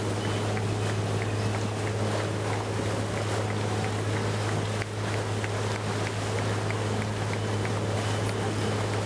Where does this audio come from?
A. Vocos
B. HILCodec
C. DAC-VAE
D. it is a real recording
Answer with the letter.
D